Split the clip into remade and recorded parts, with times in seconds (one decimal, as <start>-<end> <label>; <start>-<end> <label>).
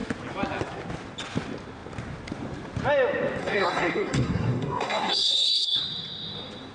0.0-3.4 recorded; 3.4-5.8 remade; 5.8-6.7 recorded